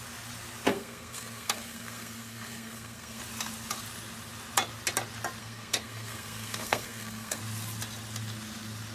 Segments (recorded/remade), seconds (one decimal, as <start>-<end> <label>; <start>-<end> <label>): 0.0-0.7 recorded; 0.7-3.2 remade; 3.2-5.4 recorded; 5.4-7.4 remade; 7.4-8.9 recorded